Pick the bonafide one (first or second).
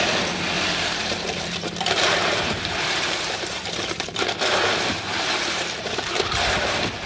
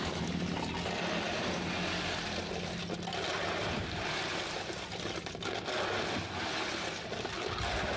second